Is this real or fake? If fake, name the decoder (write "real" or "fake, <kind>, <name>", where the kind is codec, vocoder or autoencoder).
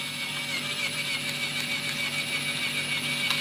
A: real